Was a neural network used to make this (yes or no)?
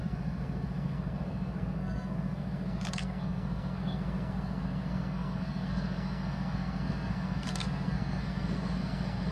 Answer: yes